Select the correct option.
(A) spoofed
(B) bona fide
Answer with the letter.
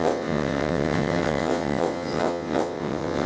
A